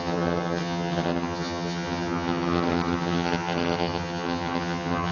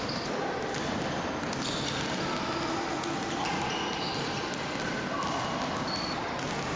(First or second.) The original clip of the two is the second